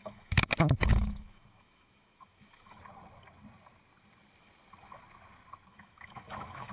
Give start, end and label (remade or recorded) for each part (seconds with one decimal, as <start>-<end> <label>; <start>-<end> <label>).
0.0-2.8 remade; 2.8-5.7 recorded; 5.7-6.7 remade